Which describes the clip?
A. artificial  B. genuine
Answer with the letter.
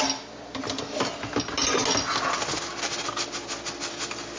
B